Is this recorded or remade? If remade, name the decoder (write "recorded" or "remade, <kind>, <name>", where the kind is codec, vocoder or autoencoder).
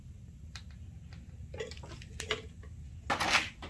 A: recorded